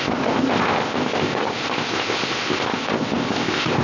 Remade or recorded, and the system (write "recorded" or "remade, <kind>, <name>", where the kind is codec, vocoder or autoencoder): remade, codec, ZipCodec